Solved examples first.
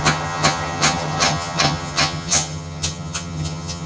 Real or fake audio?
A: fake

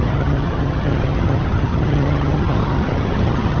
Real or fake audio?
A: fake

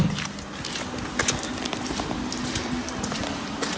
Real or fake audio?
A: real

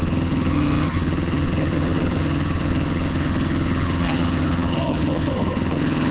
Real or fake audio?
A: fake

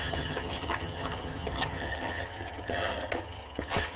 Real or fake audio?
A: fake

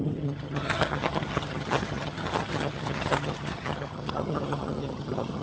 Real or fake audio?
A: fake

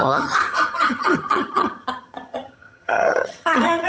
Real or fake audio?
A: fake